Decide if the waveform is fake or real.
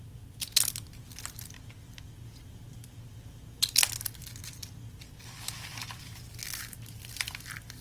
real